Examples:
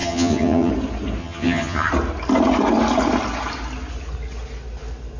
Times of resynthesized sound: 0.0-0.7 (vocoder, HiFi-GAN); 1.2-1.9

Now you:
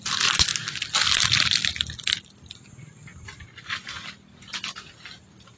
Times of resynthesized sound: none

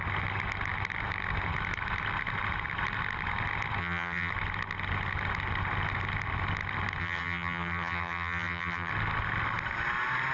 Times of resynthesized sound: 3.8-4.3 (vocoder, HiFi-GAN); 7.0-8.9

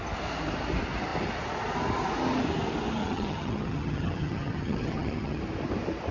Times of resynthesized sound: 3.0-5.4 (vocoder, HiFi-GAN)

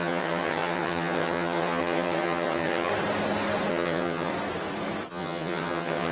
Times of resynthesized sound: 0.0-2.9 (vocoder, HiFi-GAN); 3.7-4.3; 5.1-6.1

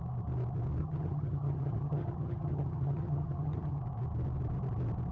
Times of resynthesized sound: 0.8-3.8 (vocoder, HiFi-GAN)

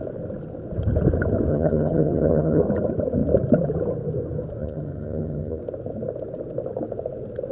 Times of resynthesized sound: 1.5-2.6 (vocoder, HiFi-GAN); 4.6-5.6

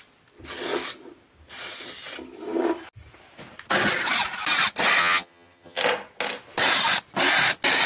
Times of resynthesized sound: 5.0-5.8 (vocoder, HiFi-GAN)